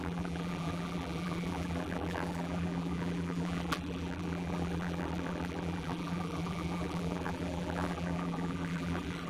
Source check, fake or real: fake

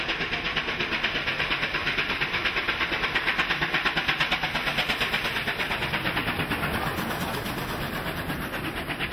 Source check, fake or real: real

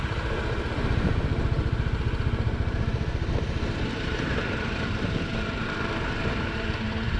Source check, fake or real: fake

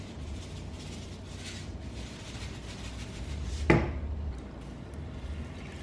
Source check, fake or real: real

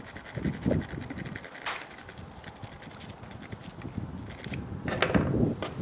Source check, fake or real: real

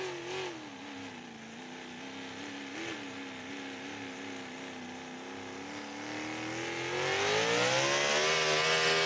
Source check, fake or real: real